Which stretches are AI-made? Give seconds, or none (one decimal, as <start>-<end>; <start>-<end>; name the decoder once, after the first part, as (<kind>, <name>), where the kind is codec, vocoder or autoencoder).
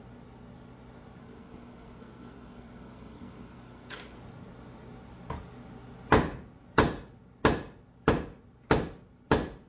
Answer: 1.2-4.2 (codec, SNAC)